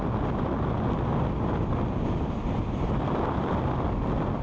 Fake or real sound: real